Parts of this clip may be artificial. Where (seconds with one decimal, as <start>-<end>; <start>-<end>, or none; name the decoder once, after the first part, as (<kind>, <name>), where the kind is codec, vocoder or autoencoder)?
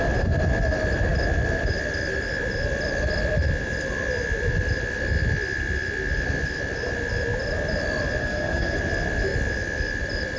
8.2-8.8 (codec, SNAC)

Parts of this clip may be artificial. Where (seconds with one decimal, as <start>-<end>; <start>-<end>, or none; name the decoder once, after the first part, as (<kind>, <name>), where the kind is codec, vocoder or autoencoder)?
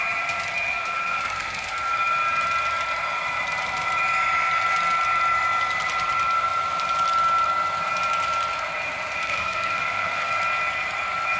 0.7-1.7 (codec, SNAC); 9.2-10.4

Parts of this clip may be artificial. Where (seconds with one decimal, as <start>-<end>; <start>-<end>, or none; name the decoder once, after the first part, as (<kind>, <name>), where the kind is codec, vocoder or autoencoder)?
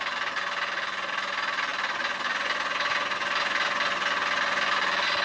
none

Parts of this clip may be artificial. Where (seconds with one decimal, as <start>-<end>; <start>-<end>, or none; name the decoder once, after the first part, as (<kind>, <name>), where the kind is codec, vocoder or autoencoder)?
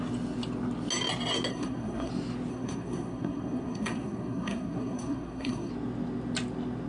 1.5-2.1 (codec, SNAC); 2.5-5.7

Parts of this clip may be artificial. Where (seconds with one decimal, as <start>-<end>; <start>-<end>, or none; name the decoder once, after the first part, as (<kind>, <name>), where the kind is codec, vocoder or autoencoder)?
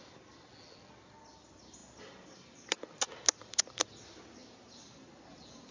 none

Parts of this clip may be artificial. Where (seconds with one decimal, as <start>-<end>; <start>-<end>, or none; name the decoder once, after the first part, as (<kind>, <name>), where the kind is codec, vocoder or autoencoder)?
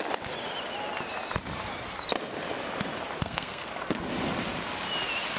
3.2-3.7 (codec, SNAC)